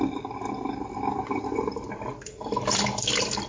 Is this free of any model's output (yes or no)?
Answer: yes